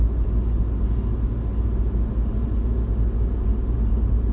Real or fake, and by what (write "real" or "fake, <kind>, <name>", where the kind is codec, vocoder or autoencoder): real